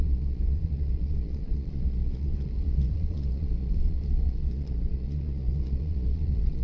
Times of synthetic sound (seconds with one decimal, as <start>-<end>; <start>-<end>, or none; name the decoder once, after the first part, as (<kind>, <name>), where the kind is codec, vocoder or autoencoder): 0.0-6.6 (vocoder, Vocos)